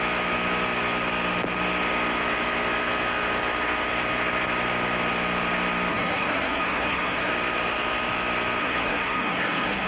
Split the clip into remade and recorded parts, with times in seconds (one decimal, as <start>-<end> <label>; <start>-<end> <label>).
0.0-5.9 recorded; 5.9-7.3 remade; 7.3-8.6 recorded; 8.6-9.9 remade